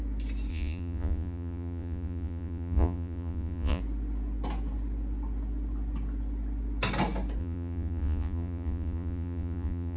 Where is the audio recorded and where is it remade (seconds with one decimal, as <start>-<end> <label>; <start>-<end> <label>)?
0.0-0.5 recorded; 0.5-3.8 remade; 3.8-7.4 recorded; 7.4-10.0 remade